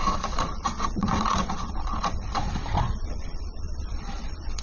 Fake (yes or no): yes